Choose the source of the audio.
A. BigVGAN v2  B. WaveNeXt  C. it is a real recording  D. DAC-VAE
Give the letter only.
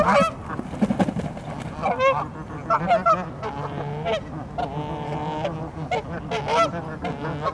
C